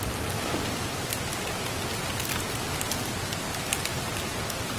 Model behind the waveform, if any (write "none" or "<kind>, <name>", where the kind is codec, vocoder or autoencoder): vocoder, BigVGAN v2